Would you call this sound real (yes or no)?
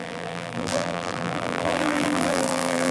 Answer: no